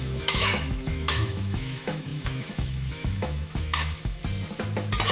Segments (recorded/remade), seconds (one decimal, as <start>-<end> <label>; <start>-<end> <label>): 0.0-4.2 remade; 4.2-5.1 recorded